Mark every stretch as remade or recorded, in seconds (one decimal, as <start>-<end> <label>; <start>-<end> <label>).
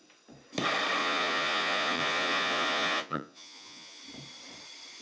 0.0-1.0 recorded; 1.0-4.0 remade; 4.0-5.0 recorded